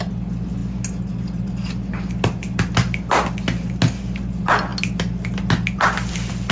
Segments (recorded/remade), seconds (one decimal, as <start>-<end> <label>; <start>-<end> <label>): 0.0-6.5 recorded